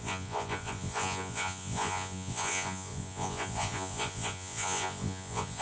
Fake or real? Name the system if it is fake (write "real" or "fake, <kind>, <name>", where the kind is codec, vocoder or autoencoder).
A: fake, vocoder, Vocos